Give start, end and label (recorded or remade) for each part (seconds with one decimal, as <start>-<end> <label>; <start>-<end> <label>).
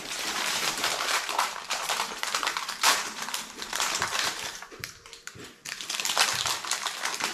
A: 0.0-5.6 remade; 5.6-7.3 recorded